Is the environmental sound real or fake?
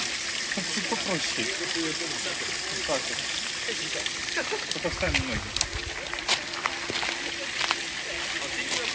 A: real